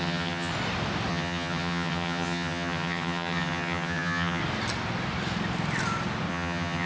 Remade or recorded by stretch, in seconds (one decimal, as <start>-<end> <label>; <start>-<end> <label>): 0.0-0.5 remade; 0.5-1.1 recorded; 1.1-4.4 remade; 4.4-6.3 recorded; 6.3-6.9 remade

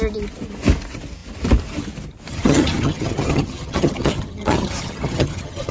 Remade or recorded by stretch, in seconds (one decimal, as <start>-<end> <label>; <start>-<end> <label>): 0.0-2.3 recorded; 2.3-5.7 remade

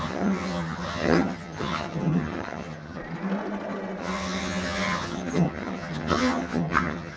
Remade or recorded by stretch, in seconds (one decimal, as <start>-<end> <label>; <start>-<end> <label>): 0.0-3.0 remade; 3.0-4.0 recorded; 4.0-7.2 remade

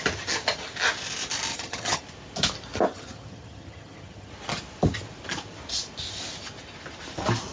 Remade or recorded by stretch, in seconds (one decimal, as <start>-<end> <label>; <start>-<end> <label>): 0.0-1.5 recorded; 1.5-2.0 remade; 2.0-2.9 recorded; 2.9-4.3 remade; 4.3-7.5 recorded

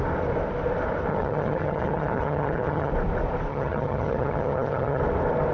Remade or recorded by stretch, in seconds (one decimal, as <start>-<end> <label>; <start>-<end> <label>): 0.0-1.1 recorded; 1.1-2.9 remade; 2.9-3.5 recorded; 3.5-5.0 remade; 5.0-5.5 recorded

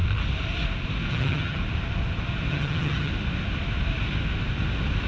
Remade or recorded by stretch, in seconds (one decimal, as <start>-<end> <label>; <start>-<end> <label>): 0.0-1.1 recorded; 1.1-1.6 remade; 1.6-2.5 recorded; 2.5-3.1 remade; 3.1-5.1 recorded

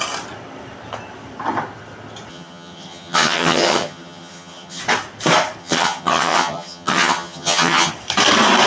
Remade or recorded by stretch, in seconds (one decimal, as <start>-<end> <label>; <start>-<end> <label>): 0.0-2.3 recorded; 2.3-4.8 remade; 4.8-5.6 recorded; 5.6-7.9 remade; 7.9-8.7 recorded